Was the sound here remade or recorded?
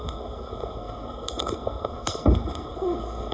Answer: remade